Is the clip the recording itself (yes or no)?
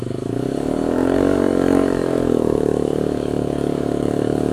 no